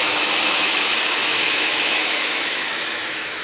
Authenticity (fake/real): fake